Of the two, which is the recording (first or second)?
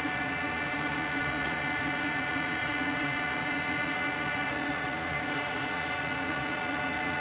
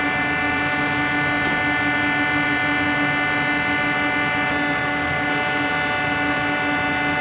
second